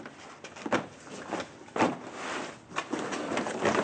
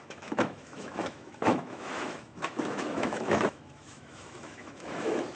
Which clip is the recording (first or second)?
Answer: first